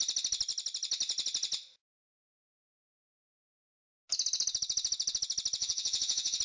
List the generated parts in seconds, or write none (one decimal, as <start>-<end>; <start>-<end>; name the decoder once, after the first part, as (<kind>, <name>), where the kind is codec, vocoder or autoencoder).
5.6-6.4 (vocoder, Vocos)